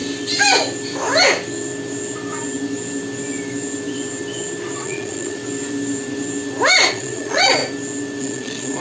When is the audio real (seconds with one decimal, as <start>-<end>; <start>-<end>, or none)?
0.0-4.8; 5.4-6.9; 7.6-8.2